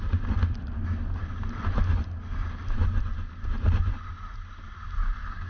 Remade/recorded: recorded